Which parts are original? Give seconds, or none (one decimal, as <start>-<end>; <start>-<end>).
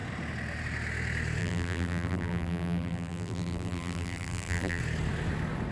0.0-1.4; 4.8-5.7